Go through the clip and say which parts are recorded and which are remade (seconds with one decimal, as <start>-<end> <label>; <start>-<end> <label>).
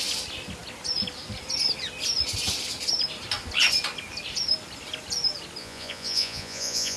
0.0-5.6 recorded; 5.6-7.0 remade